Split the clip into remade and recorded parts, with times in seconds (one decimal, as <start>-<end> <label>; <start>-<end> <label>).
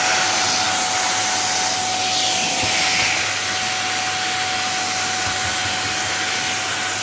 0.0-7.0 recorded